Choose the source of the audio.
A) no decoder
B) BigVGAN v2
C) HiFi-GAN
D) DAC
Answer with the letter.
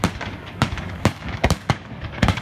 D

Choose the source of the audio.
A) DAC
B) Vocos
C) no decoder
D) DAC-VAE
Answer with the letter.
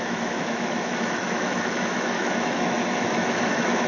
D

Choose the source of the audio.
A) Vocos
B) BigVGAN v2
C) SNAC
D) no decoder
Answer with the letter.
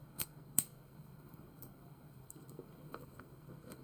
C